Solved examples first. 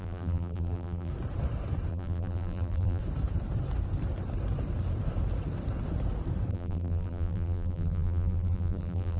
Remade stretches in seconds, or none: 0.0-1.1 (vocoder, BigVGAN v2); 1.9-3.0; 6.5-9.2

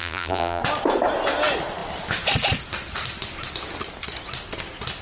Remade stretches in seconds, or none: 0.0-0.6 (vocoder, BigVGAN v2)